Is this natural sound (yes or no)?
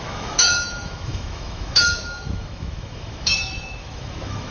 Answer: no